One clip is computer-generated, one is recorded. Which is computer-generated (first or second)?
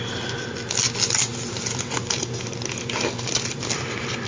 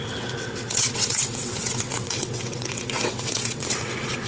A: second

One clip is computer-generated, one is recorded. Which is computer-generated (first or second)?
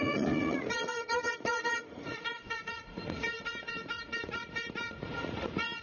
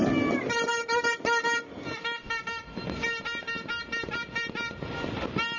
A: first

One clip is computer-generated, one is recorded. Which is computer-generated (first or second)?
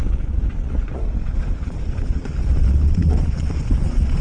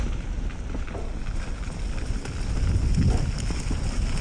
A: first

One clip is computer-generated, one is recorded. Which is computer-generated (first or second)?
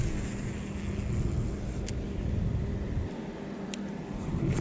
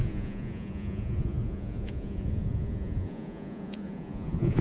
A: second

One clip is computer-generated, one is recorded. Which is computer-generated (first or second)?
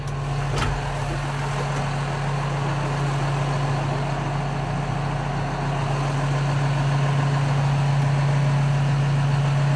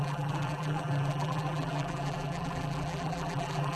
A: second